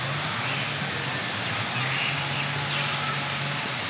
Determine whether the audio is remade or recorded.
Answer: recorded